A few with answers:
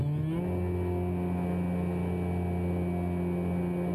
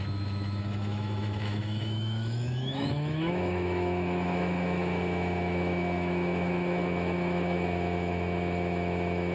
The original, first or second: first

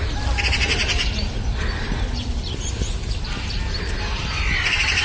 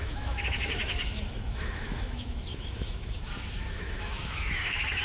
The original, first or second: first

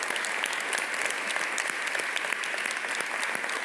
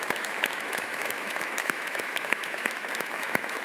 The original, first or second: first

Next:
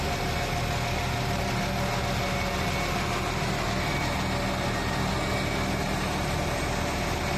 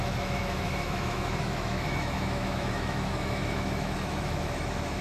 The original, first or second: first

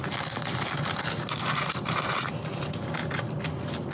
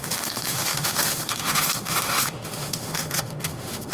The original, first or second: first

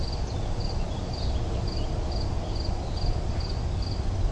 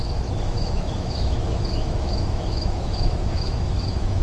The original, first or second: first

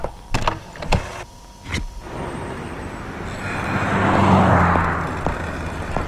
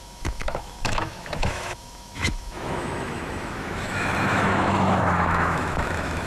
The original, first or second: first